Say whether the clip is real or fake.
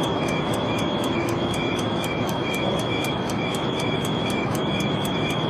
fake